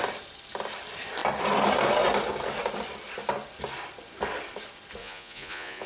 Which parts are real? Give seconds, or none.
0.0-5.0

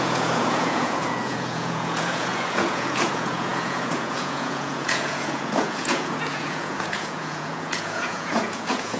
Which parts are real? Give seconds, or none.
none

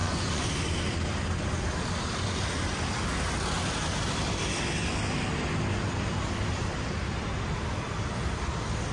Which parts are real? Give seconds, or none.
0.5-8.9

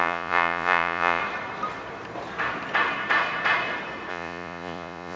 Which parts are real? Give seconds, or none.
1.2-4.1

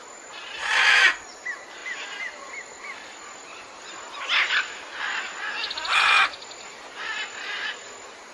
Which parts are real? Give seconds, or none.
0.0-8.3

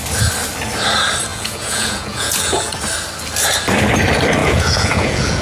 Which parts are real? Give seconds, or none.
0.0-1.3; 2.8-4.4

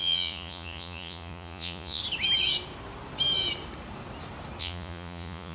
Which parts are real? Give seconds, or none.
2.0-4.6